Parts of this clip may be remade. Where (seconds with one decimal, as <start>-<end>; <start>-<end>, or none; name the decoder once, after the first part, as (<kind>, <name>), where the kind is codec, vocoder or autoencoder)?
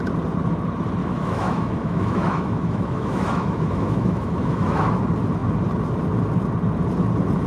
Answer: 1.0-5.0 (autoencoder, DAC-VAE)